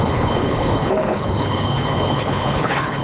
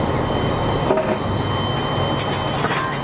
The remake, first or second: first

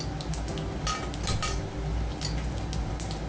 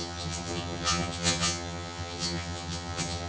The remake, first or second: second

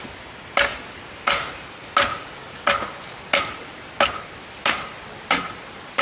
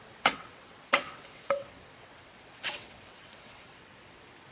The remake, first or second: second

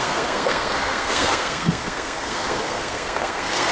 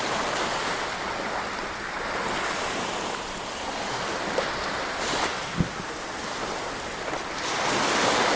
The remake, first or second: first